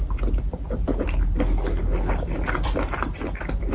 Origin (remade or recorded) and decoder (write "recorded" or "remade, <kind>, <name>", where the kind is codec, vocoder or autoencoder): recorded